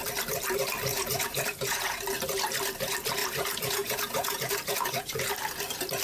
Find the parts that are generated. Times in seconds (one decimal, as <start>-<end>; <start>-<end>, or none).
0.9-2.0; 3.2-5.3